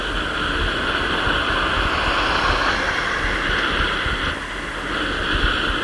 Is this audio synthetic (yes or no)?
no